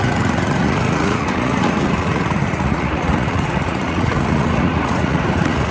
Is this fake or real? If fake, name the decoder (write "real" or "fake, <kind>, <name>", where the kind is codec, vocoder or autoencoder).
fake, vocoder, Vocos